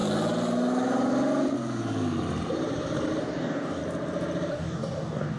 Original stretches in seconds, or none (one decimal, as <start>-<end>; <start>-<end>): 0.0-3.2; 3.8-4.5